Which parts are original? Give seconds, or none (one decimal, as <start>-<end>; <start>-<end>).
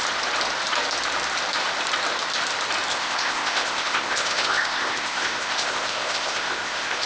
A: 0.0-2.9